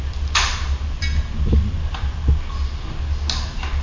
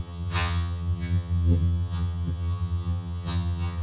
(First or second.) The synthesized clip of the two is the second